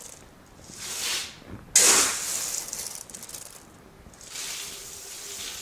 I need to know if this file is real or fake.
real